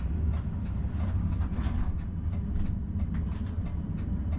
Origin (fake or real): real